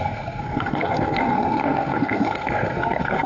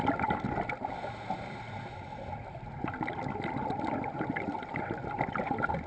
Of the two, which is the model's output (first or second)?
first